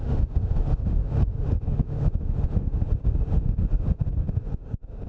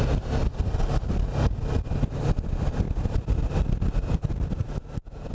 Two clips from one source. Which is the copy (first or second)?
first